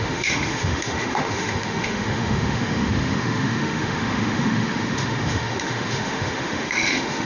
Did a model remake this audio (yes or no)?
yes